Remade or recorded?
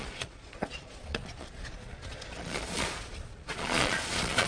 remade